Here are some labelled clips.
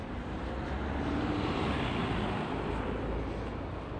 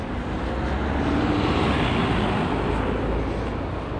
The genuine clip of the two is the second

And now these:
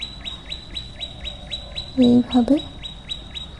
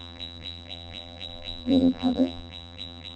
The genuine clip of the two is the first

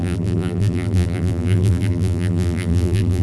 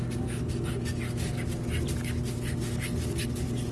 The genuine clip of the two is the second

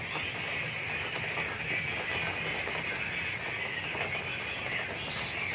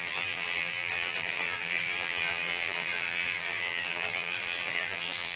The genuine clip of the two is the first